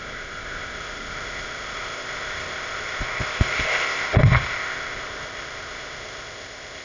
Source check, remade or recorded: remade